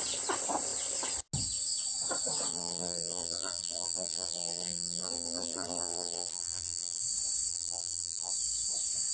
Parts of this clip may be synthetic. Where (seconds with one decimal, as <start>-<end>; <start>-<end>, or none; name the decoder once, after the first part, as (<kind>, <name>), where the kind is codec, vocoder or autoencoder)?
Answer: 2.5-7.0 (vocoder, BigVGAN v2); 7.5-8.3